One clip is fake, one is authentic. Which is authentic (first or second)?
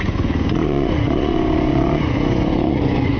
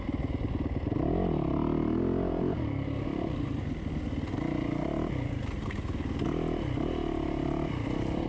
second